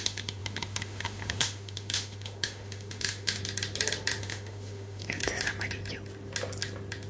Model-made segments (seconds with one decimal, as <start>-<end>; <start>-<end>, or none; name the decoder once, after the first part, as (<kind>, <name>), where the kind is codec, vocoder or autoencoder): 0.0-3.4 (autoencoder, DAC-VAE); 4.2-5.2